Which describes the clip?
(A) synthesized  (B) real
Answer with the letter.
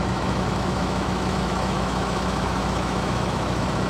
A